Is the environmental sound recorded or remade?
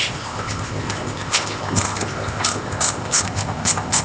remade